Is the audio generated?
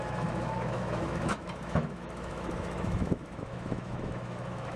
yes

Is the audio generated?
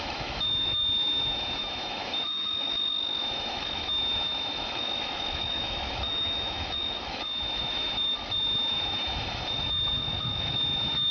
yes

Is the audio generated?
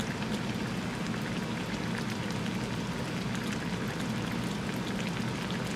no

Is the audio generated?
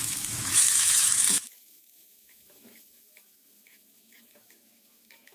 yes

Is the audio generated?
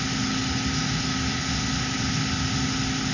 no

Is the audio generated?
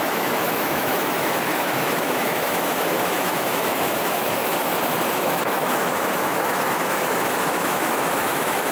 yes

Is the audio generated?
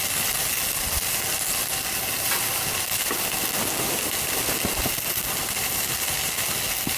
no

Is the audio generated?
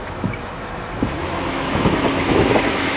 yes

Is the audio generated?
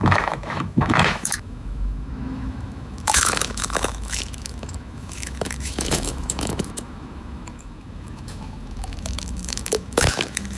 yes